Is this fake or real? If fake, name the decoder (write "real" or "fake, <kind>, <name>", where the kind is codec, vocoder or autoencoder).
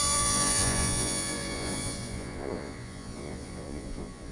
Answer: fake, vocoder, Vocos